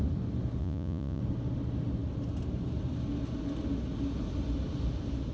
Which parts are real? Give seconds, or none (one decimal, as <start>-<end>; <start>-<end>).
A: 0.0-0.6; 1.2-5.3